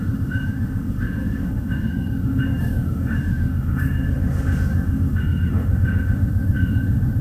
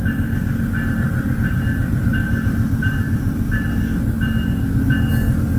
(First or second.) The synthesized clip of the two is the first